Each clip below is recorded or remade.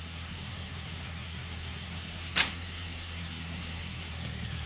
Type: remade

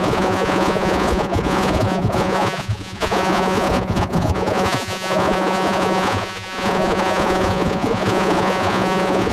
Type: remade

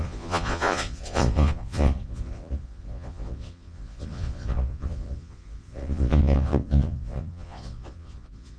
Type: remade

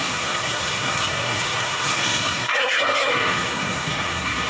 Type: remade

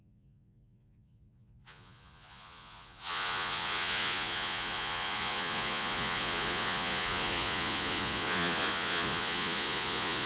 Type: remade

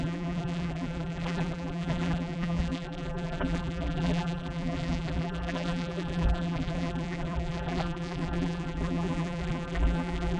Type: remade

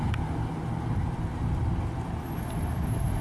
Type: recorded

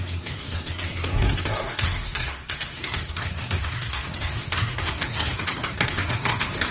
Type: remade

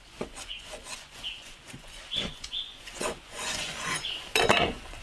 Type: remade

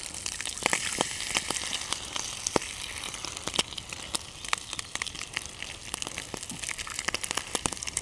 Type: recorded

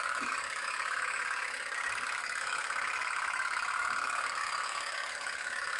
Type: remade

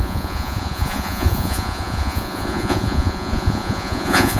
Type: remade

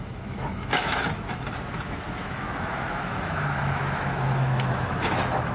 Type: remade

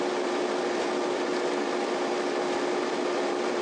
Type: recorded